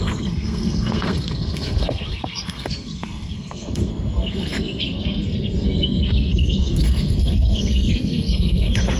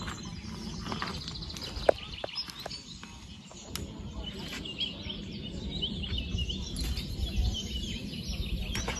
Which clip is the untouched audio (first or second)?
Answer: second